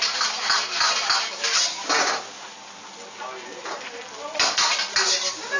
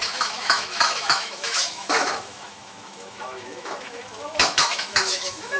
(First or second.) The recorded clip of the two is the first